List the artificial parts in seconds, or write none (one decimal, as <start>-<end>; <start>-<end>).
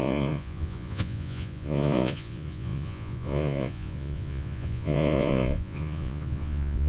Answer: 0.0-6.9